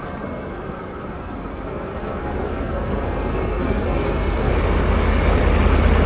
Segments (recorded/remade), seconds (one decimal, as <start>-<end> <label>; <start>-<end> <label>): 0.0-4.5 remade; 4.5-6.1 recorded